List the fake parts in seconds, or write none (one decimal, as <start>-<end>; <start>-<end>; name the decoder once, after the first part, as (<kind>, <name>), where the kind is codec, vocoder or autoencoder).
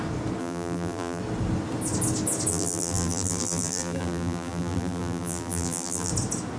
0.4-1.2 (vocoder, BigVGAN v2); 2.5-6.1